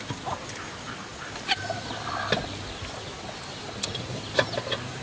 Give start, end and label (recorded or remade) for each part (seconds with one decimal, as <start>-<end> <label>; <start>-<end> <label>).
0.0-5.0 recorded